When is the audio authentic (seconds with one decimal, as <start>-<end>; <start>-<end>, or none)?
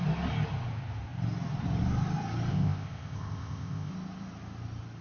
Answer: 0.0-2.5; 3.9-5.0